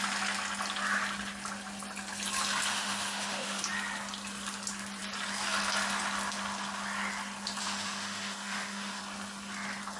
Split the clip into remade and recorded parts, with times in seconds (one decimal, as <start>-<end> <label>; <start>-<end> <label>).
0.0-2.7 recorded; 2.7-3.6 remade; 3.6-7.6 recorded; 7.6-9.0 remade; 9.0-10.0 recorded